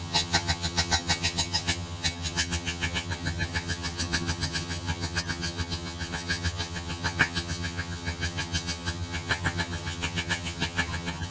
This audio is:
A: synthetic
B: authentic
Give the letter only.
A